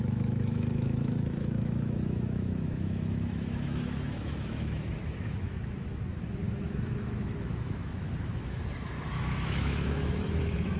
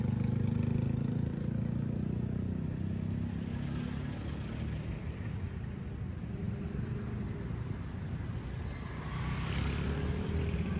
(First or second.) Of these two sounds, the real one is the second